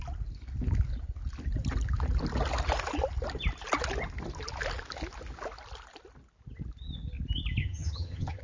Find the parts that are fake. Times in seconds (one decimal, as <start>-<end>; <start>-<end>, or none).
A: 7.6-8.4